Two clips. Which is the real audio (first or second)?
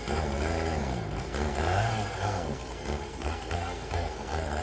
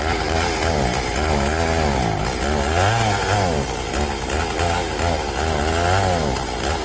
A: second